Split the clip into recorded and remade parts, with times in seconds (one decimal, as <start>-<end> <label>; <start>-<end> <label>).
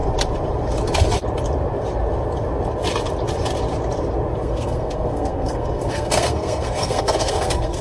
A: 0.0-4.4 recorded; 4.4-7.8 remade